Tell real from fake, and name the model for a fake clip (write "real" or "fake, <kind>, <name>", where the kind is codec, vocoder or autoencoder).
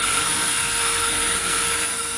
fake, codec, SNAC